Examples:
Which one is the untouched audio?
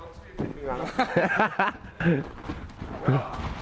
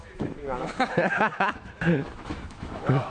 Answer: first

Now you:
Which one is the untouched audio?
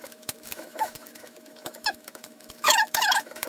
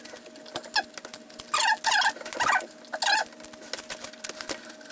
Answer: second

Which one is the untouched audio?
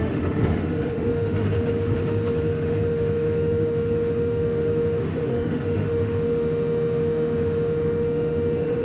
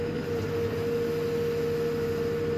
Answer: second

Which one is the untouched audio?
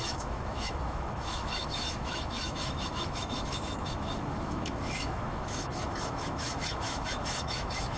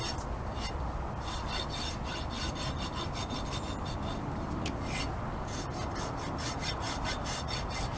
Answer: second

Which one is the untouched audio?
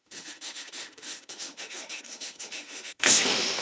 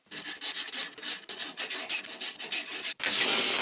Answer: second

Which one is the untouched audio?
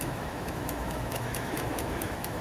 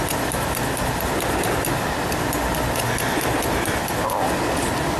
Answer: second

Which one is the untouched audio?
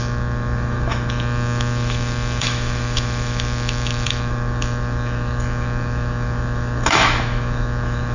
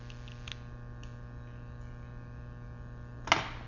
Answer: second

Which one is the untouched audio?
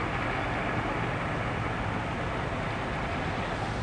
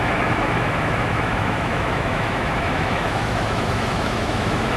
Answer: first